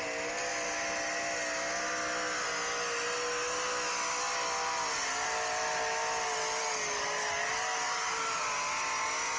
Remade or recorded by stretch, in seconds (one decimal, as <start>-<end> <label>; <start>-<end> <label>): 0.0-6.6 recorded; 6.6-8.4 remade; 8.4-9.4 recorded